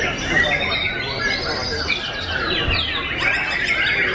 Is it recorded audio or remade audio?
recorded